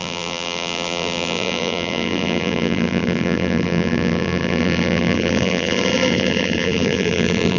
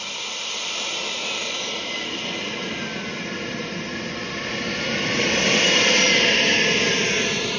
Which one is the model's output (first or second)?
first